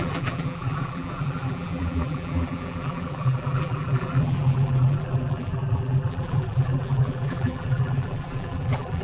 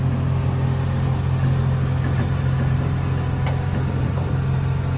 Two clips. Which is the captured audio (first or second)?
second